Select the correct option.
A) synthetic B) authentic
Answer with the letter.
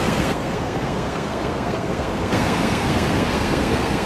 A